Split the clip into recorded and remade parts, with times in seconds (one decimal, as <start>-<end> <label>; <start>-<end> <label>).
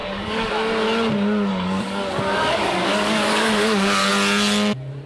0.0-0.5 remade; 0.5-1.5 recorded; 1.5-4.1 remade; 4.1-5.1 recorded